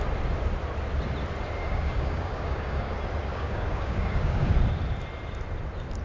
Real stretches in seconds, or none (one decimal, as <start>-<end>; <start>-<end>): 0.0-1.6; 2.9-3.3; 4.5-6.0